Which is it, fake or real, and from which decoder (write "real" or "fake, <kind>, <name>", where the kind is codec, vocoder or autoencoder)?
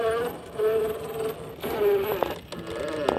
real